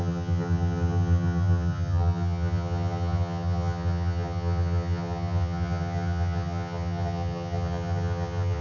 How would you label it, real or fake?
fake